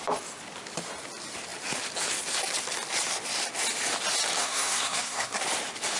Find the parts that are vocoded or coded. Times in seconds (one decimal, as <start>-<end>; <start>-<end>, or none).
4.4-5.4

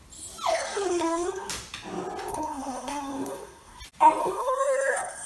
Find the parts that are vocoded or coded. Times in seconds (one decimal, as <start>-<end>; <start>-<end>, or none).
0.5-1.5; 2.3-3.8; 4.2-5.3

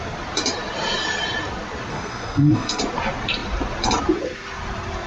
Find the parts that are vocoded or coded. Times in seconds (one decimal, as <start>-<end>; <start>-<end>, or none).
1.9-2.8